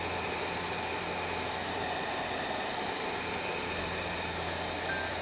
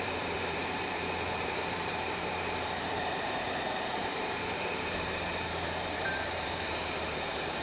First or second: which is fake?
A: second